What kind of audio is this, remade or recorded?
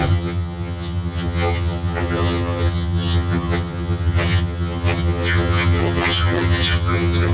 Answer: remade